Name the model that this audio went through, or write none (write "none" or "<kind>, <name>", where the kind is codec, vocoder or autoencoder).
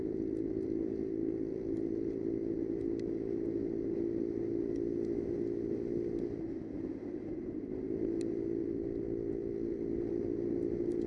none